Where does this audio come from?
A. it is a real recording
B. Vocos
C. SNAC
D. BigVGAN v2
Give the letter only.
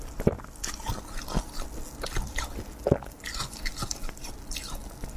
A